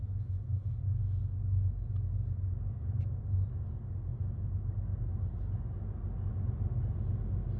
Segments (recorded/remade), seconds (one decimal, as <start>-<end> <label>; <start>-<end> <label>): 0.0-7.6 recorded